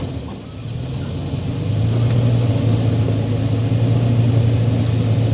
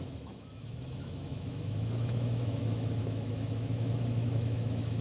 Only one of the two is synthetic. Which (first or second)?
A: second